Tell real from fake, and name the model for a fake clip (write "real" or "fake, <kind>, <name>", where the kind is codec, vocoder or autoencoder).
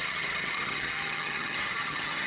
fake, vocoder, HiFi-GAN